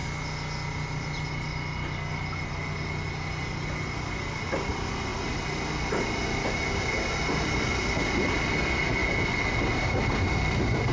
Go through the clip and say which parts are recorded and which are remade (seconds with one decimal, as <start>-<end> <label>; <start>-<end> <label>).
0.0-10.9 recorded